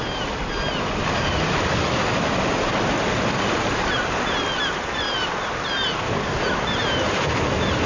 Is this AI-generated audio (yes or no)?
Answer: no